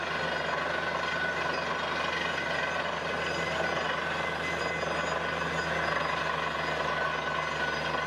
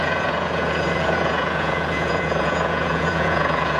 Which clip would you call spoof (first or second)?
second